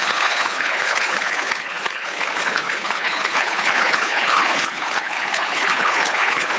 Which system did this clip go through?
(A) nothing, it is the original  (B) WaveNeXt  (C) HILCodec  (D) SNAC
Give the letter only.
C